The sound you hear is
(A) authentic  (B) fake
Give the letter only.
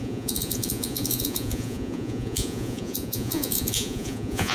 B